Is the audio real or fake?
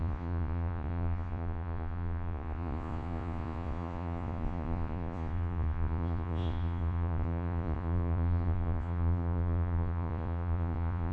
fake